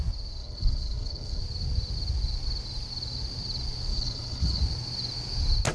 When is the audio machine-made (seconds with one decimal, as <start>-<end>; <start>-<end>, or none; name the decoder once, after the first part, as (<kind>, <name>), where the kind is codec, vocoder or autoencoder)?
0.4-1.4 (codec, HILCodec); 3.9-4.6